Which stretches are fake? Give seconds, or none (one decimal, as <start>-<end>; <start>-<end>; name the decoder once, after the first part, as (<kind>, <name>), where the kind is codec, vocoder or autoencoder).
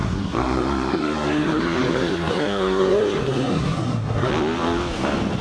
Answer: 0.0-4.3 (codec, SNAC)